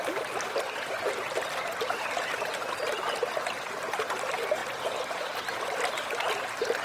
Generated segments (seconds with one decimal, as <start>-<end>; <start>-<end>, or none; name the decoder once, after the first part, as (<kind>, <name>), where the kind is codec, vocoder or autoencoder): none